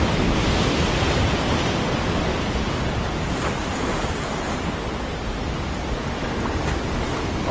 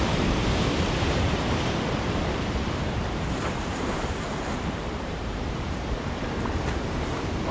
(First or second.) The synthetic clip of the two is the second